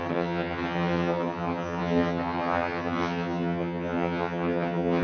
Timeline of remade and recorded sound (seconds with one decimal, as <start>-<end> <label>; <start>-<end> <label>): 0.0-5.0 remade